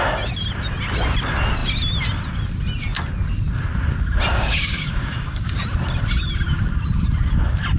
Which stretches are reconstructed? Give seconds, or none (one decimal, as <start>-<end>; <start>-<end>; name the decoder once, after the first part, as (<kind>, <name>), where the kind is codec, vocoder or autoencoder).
4.3-5.6 (codec, DAC)